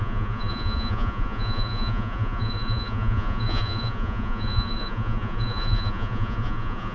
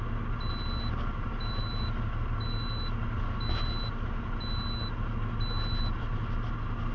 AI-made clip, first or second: first